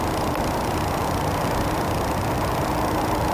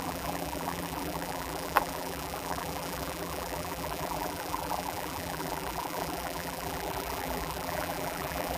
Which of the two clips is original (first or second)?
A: first